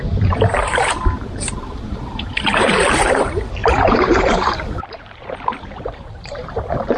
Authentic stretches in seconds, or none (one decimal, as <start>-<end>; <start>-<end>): none